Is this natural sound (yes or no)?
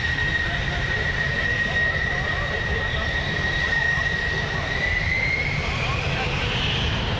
no